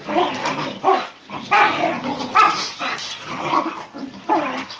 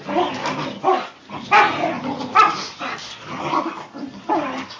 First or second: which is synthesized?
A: first